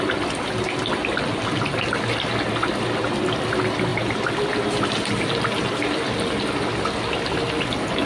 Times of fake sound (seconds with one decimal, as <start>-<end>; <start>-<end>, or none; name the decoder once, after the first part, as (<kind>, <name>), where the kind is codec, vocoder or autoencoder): none